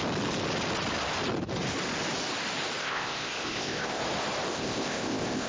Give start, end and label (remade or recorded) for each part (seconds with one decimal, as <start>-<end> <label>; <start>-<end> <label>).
0.0-2.8 recorded; 2.8-4.0 remade; 4.0-4.5 recorded; 4.5-5.5 remade